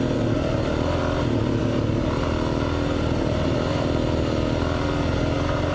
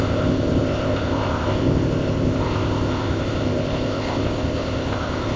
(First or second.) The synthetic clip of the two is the second